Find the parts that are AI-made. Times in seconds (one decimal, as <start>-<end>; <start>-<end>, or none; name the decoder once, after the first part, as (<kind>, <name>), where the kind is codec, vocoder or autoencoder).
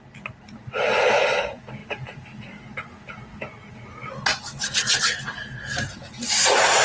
none